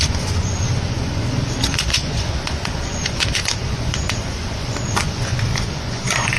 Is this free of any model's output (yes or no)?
no